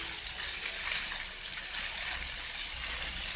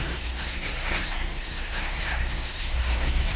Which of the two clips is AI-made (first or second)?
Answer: second